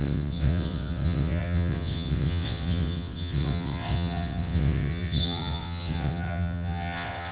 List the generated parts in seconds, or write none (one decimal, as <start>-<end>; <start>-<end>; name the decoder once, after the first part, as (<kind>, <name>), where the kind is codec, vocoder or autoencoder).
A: 0.0-7.3 (vocoder, WaveNeXt)